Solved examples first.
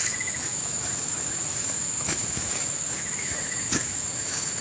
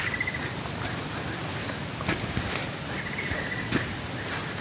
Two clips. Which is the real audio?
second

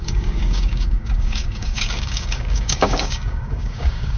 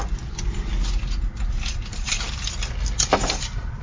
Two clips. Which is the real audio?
second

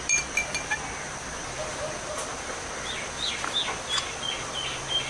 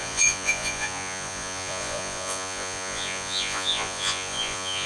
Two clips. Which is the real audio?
first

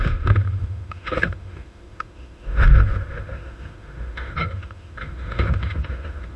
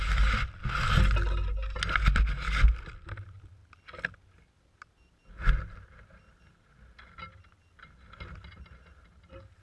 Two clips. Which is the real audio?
second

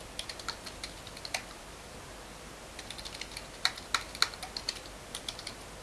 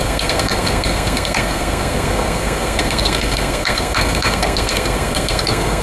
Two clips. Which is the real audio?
first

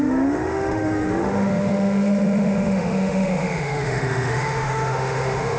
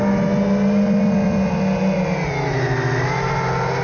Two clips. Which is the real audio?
second